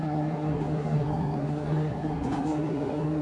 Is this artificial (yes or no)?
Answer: yes